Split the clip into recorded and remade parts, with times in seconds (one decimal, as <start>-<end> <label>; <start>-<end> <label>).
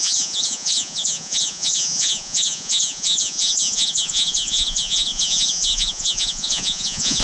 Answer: 0.0-7.2 remade